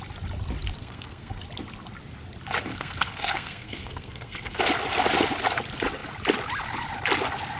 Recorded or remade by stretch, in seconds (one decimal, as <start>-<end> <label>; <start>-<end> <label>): 0.0-0.8 recorded; 0.8-1.4 remade; 1.4-2.7 recorded; 2.7-4.6 remade; 4.6-7.6 recorded